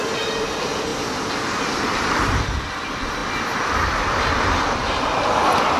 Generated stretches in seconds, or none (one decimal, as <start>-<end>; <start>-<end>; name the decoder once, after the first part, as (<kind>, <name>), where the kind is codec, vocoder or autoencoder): 3.2-5.0 (vocoder, BigVGAN v2)